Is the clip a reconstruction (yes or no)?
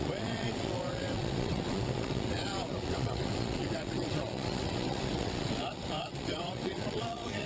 yes